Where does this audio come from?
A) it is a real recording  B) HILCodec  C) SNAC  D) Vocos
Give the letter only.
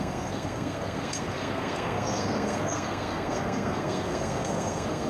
C